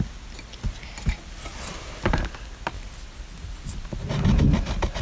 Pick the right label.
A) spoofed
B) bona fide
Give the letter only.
B